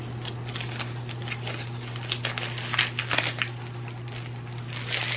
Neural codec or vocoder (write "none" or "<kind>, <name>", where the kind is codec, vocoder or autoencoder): none